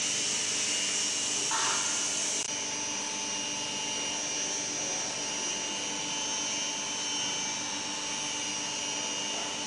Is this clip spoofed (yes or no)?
no